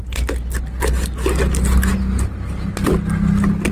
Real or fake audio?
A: real